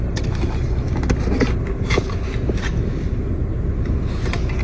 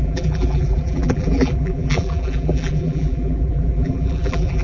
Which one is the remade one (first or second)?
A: second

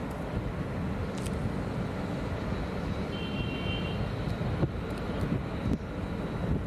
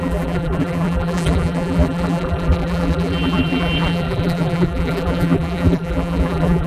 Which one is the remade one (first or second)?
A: second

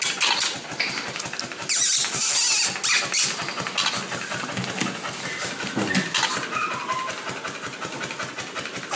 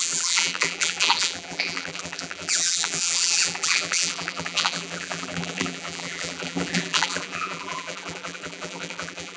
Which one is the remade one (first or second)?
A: second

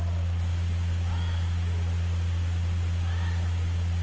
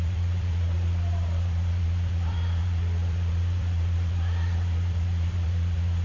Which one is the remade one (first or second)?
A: second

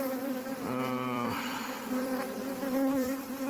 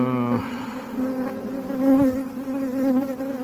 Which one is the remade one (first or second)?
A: first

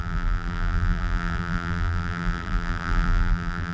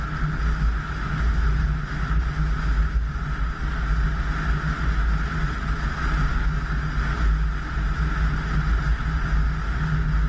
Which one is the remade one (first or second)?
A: first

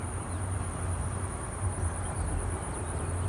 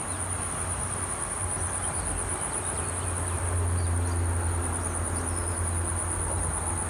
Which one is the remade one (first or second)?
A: first